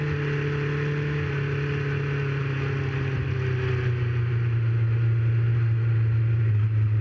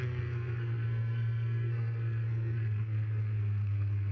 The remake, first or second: second